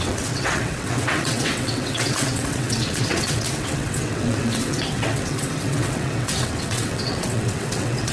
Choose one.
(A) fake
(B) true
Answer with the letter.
A